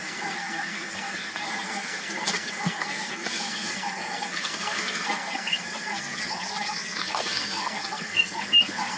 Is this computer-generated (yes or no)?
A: yes